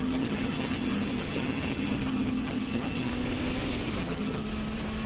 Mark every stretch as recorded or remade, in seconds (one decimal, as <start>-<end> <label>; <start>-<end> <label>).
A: 0.0-3.1 remade; 3.1-4.0 recorded; 4.0-4.4 remade; 4.4-5.1 recorded